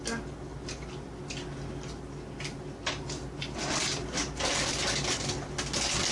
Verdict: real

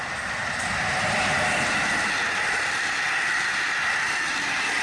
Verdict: real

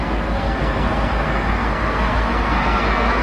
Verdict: fake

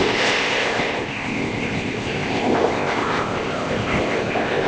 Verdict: fake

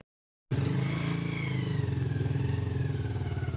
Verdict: real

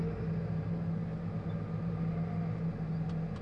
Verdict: real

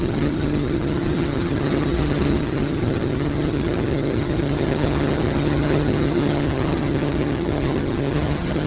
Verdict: fake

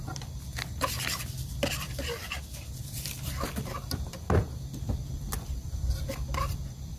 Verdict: fake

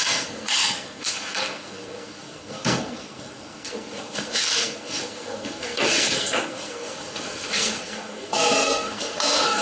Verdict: fake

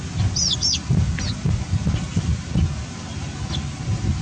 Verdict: real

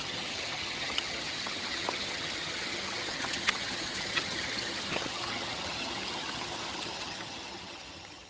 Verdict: fake